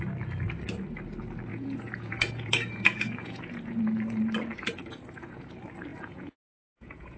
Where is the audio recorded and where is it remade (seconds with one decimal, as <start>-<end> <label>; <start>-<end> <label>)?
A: 0.0-1.5 recorded; 1.5-3.8 remade; 3.8-4.8 recorded; 4.8-5.5 remade; 5.5-5.9 recorded; 5.9-7.2 remade